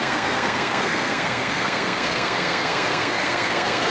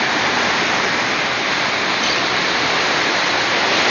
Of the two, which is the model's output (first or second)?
first